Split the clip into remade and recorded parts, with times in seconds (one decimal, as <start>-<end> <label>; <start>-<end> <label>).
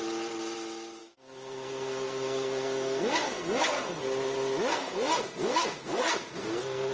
0.0-1.0 recorded; 1.0-4.0 remade; 4.0-4.7 recorded; 4.7-6.9 remade